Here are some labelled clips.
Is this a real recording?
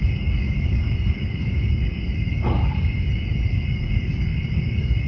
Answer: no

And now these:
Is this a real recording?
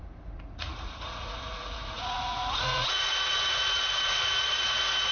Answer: no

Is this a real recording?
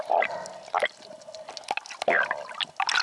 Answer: yes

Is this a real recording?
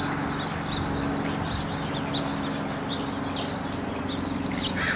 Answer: yes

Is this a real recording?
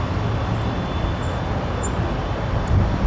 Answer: yes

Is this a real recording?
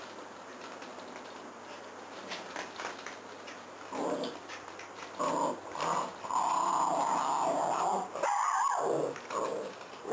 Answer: yes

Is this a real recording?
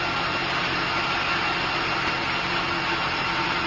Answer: yes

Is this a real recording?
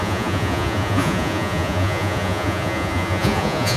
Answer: no